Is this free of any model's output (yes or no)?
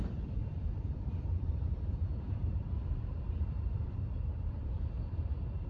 no